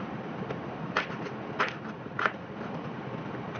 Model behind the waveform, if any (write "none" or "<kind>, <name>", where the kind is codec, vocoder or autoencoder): none